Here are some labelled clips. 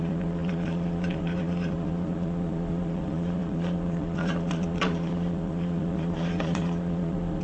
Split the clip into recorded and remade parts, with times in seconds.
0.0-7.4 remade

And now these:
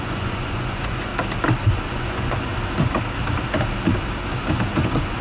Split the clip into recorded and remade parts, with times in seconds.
0.0-1.1 remade; 1.1-1.9 recorded; 1.9-2.5 remade; 2.5-4.7 recorded; 4.7-5.2 remade

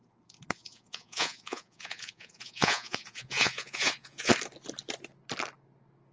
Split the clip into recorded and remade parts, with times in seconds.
0.0-0.6 recorded; 0.6-4.3 remade; 4.3-6.1 recorded

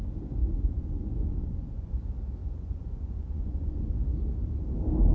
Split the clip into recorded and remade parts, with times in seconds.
0.0-0.4 recorded; 0.4-1.9 remade; 1.9-2.4 recorded; 2.4-3.9 remade; 3.9-5.1 recorded